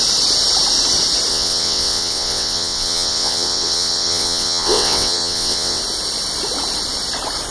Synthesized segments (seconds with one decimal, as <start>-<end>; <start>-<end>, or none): 1.3-5.8

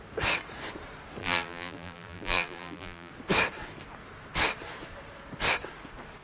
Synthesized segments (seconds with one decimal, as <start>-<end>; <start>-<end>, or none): 1.2-3.1